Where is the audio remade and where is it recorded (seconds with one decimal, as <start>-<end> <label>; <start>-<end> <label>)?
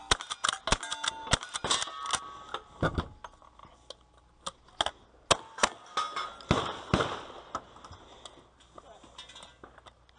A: 0.0-10.2 recorded